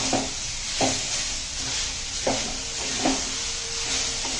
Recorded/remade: recorded